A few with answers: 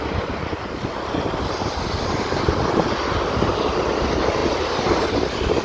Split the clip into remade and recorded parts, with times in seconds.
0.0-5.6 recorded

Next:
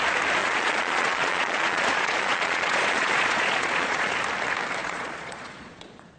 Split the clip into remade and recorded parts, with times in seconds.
0.0-0.4 recorded; 0.4-4.1 remade; 4.1-4.8 recorded; 4.8-6.2 remade

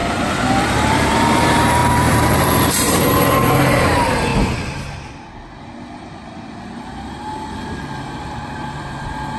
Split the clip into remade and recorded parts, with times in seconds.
0.0-0.6 recorded; 0.6-4.3 remade; 4.3-6.6 recorded; 6.6-9.4 remade

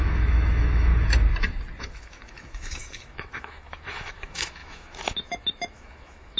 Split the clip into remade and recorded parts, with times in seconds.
0.0-0.9 remade; 0.9-1.8 recorded; 1.8-6.4 remade